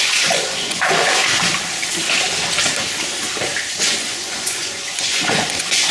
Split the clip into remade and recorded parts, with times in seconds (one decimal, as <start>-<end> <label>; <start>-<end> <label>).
0.0-1.2 remade; 1.2-3.8 recorded; 3.8-5.9 remade